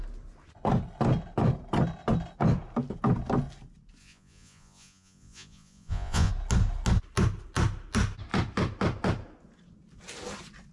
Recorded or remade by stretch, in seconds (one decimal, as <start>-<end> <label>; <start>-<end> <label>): 0.0-4.0 recorded; 4.0-6.3 remade; 6.3-10.7 recorded